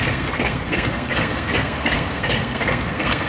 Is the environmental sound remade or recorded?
remade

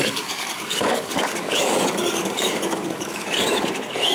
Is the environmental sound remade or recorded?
remade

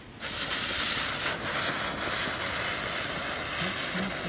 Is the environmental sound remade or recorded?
recorded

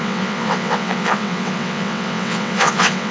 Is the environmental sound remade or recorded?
remade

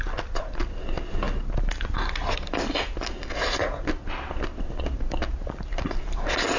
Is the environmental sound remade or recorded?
recorded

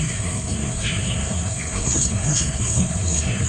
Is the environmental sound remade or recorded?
remade